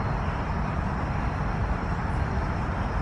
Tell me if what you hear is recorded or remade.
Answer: recorded